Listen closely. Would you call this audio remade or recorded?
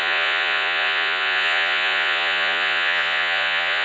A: remade